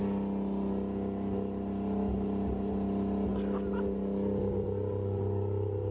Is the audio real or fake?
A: real